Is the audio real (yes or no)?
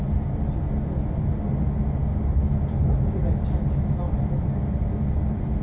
yes